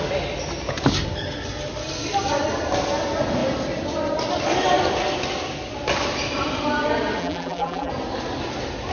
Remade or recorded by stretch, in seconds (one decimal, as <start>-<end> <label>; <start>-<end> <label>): 0.0-7.2 recorded; 7.2-7.9 remade; 7.9-8.9 recorded